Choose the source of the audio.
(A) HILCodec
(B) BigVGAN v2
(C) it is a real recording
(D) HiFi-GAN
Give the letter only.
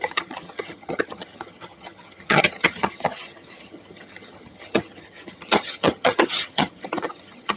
D